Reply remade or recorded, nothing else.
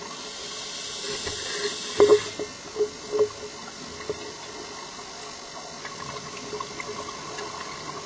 recorded